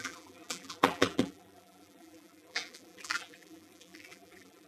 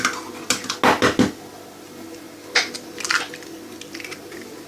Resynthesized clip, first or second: first